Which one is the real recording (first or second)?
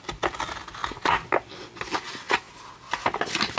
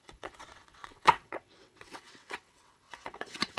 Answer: first